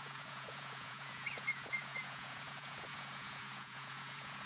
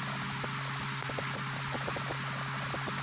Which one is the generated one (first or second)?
first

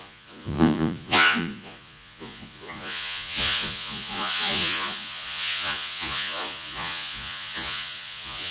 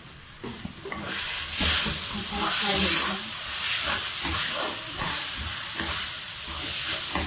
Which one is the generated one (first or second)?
first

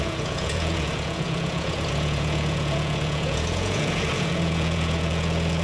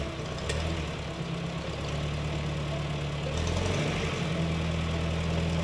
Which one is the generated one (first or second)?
first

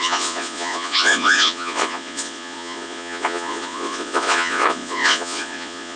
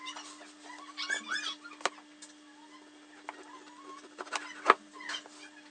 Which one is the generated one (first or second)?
first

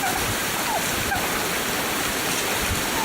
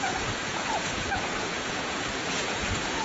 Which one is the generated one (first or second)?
second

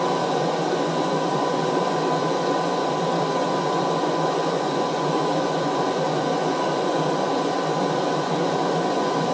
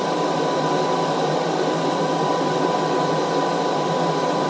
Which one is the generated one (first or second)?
first